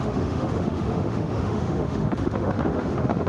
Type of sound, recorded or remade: remade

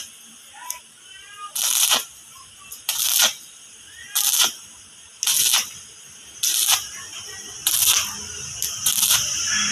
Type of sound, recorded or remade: recorded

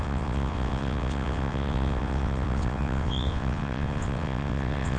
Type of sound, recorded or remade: remade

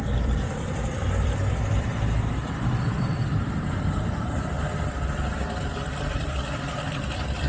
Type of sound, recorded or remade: remade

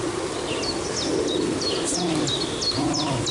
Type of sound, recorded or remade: recorded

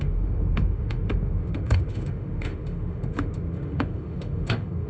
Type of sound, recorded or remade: remade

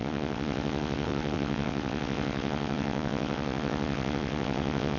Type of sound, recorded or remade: remade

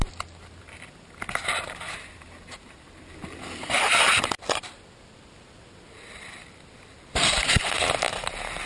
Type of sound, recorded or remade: recorded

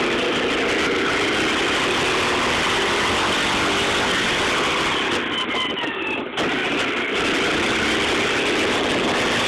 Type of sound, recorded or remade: recorded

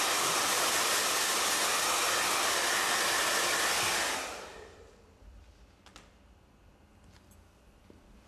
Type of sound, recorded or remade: recorded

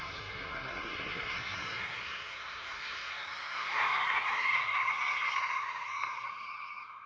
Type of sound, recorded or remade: remade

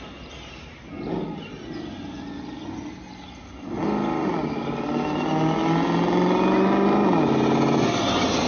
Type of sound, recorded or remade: recorded